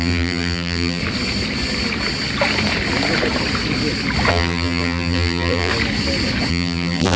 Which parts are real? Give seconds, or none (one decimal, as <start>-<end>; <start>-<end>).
1.0-4.3; 5.7-6.5